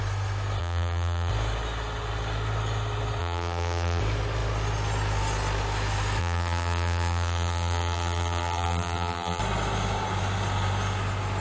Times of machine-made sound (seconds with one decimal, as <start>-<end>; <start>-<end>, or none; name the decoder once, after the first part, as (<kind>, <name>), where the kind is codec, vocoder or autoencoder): 0.6-1.3 (vocoder, BigVGAN v2); 3.2-4.0; 6.2-9.4